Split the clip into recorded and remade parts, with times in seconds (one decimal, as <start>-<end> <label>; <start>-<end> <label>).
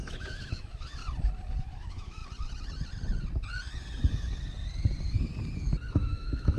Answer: 0.0-1.0 remade; 1.0-1.6 recorded; 1.6-2.2 remade; 2.2-5.9 recorded; 5.9-6.6 remade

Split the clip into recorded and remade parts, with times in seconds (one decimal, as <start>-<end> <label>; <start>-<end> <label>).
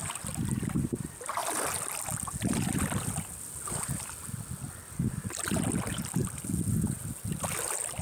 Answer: 0.0-8.0 recorded